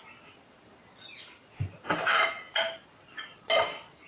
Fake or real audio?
real